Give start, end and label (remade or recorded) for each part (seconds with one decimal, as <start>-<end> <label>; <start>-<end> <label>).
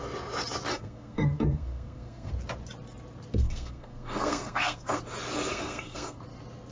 0.0-0.7 recorded; 0.7-2.3 remade; 2.3-3.4 recorded; 3.4-5.0 remade; 5.0-5.5 recorded; 5.5-6.2 remade; 6.2-6.7 recorded